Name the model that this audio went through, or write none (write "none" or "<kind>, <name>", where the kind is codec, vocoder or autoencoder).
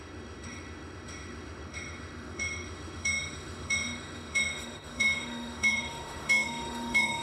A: autoencoder, DAC-VAE